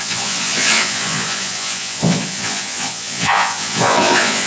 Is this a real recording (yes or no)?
no